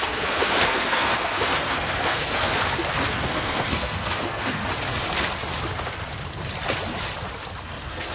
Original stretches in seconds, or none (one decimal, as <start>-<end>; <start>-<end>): 2.6-3.1; 4.6-7.6